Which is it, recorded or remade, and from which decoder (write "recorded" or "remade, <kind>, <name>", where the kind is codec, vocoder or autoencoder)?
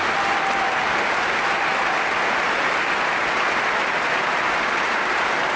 recorded